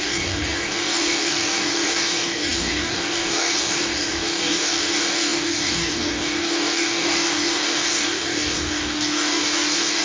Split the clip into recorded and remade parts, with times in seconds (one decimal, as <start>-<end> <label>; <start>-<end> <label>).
0.0-10.0 remade